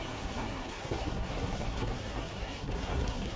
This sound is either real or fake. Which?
fake